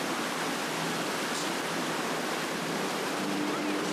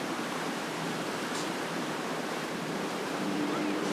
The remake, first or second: second